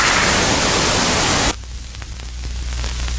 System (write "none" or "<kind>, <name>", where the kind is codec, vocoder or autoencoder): none